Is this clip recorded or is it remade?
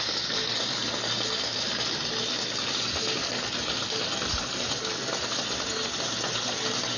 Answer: recorded